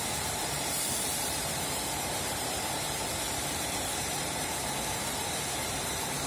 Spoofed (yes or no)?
yes